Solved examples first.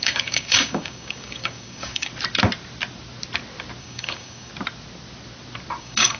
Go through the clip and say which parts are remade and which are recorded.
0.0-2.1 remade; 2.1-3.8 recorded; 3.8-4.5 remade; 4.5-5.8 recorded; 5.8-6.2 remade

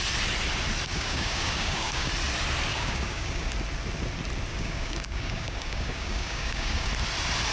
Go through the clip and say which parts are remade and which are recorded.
0.0-0.9 recorded; 0.9-2.1 remade; 2.1-2.7 recorded; 2.7-3.5 remade; 3.5-4.5 recorded; 4.5-6.9 remade; 6.9-7.5 recorded

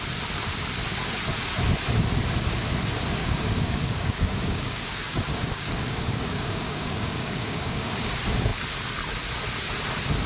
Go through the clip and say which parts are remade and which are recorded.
0.0-3.2 recorded; 3.2-8.1 remade; 8.1-10.3 recorded

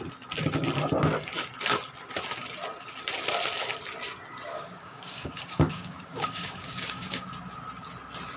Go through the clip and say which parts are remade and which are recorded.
0.0-4.5 recorded; 4.5-7.3 remade; 7.3-8.4 recorded

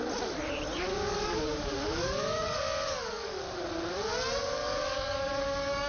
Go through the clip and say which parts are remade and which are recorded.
0.0-0.9 recorded; 0.9-3.4 remade; 3.4-4.6 recorded; 4.6-5.9 remade